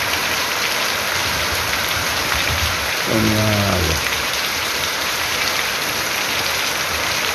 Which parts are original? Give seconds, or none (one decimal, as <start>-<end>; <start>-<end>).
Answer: 0.0-1.2; 5.4-7.3